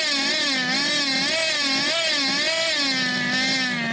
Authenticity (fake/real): real